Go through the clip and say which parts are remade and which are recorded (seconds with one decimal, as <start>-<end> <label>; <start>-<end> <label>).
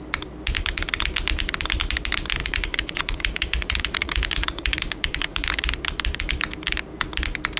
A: 0.0-2.4 recorded; 2.4-5.7 remade; 5.7-7.6 recorded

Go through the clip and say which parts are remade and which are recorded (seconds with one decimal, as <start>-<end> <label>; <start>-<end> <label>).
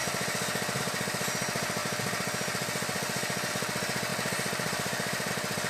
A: 0.0-4.1 recorded; 4.1-5.3 remade; 5.3-5.7 recorded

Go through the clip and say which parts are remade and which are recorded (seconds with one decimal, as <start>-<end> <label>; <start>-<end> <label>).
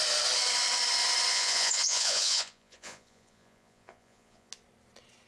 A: 0.0-1.3 recorded; 1.3-4.5 remade; 4.5-5.3 recorded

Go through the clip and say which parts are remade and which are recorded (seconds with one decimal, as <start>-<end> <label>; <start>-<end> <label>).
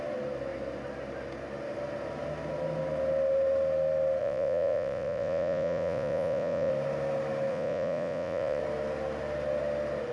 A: 0.0-4.2 recorded; 4.2-6.7 remade; 6.7-7.5 recorded; 7.5-8.6 remade; 8.6-10.1 recorded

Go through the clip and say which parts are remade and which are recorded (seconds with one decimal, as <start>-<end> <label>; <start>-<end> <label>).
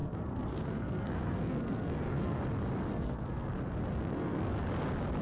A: 0.0-2.4 remade; 2.4-2.9 recorded; 2.9-3.5 remade; 3.5-3.9 recorded; 3.9-4.5 remade; 4.5-5.2 recorded